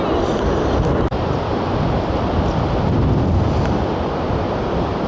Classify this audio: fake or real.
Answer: real